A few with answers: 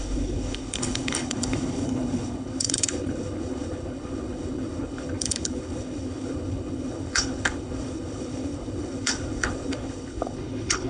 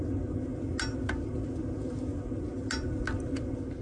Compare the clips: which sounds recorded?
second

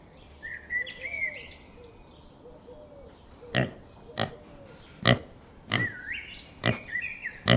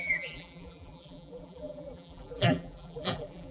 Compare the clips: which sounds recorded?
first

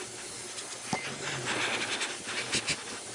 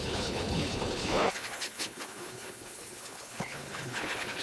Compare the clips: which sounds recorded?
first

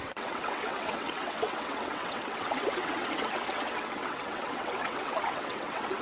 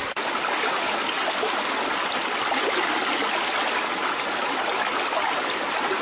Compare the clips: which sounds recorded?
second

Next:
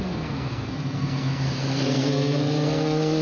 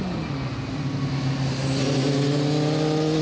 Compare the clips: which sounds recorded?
second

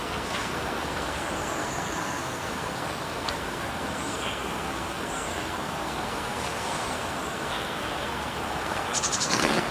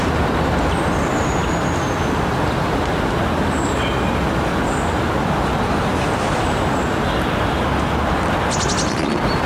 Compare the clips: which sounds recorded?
second